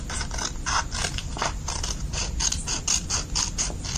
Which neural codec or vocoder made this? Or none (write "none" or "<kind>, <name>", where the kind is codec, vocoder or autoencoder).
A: none